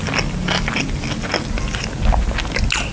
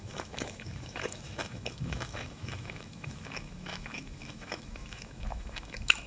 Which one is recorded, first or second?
first